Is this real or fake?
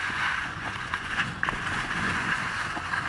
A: fake